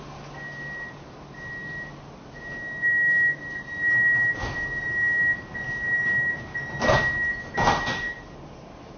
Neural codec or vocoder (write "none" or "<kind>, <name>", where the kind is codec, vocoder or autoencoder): none